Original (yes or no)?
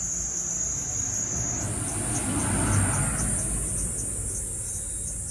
yes